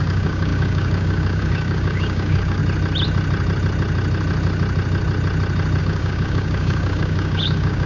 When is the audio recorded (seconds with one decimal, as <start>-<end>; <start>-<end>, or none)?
2.6-5.8